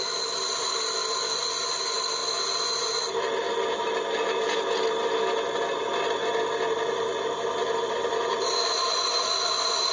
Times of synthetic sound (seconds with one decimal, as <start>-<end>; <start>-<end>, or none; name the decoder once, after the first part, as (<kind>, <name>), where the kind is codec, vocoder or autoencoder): 7.6-9.9 (vocoder, BigVGAN v2)